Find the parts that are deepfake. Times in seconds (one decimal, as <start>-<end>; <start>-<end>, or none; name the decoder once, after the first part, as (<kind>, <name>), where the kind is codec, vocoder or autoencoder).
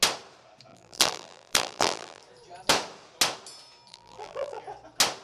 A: 0.7-2.2 (vocoder, BigVGAN v2); 3.9-4.6